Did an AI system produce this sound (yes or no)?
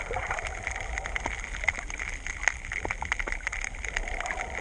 no